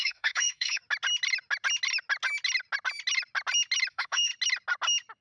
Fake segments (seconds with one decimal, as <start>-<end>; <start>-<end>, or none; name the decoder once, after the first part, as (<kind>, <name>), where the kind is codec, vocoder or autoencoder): 0.0-0.8 (autoencoder, DAC-VAE); 3.9-4.3